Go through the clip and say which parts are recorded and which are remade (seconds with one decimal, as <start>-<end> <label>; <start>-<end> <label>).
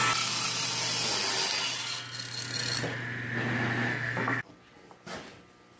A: 0.0-3.9 recorded; 3.9-4.5 remade; 4.5-5.8 recorded